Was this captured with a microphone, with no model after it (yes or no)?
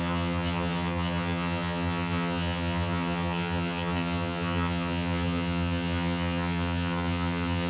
no